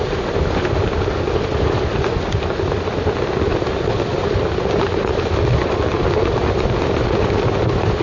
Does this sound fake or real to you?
real